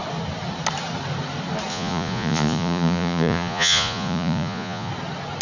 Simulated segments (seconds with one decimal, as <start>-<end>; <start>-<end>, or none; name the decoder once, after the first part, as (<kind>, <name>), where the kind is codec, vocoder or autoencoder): 1.7-4.9 (vocoder, Vocos)